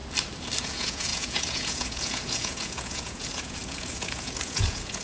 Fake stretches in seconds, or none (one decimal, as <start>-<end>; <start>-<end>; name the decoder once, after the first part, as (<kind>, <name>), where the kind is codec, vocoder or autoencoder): 0.6-5.0 (vocoder, Vocos)